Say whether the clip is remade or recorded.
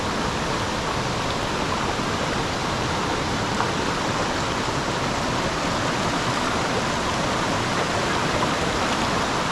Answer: recorded